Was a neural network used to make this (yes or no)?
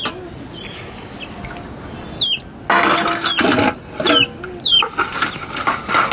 no